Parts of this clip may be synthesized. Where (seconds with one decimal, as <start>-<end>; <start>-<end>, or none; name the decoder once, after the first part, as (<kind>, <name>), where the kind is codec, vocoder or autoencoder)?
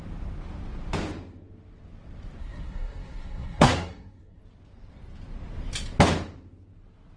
2.4-4.4 (codec, SNAC)